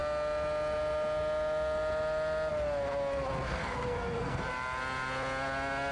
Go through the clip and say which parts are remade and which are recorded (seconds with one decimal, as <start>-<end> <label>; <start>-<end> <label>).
0.0-3.5 recorded; 3.5-4.4 remade; 4.4-5.9 recorded